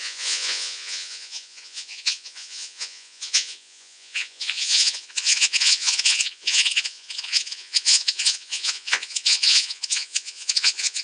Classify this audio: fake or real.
fake